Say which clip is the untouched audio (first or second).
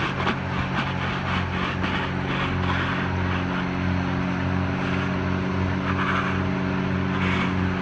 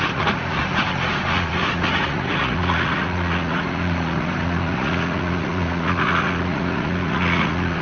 first